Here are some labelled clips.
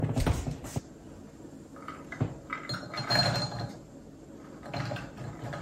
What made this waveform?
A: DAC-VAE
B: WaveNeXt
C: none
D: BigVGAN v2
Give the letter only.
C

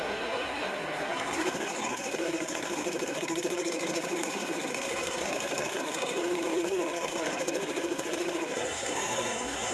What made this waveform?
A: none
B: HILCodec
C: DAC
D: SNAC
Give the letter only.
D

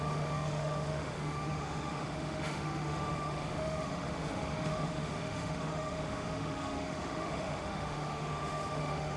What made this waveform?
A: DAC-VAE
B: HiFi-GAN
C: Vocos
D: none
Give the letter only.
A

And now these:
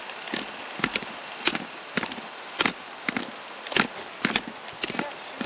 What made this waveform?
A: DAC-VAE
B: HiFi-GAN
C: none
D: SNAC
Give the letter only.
C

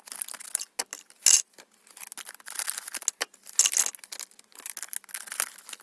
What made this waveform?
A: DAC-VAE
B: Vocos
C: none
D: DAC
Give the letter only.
C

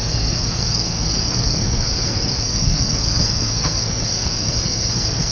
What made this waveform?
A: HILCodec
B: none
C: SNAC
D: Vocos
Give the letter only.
C